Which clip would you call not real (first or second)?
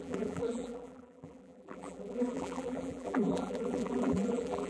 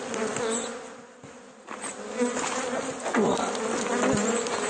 first